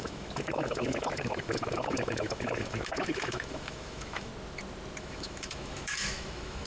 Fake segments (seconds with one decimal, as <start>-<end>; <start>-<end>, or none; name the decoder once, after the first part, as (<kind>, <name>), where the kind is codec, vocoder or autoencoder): 0.0-4.3 (autoencoder, DAC-VAE); 5.0-6.7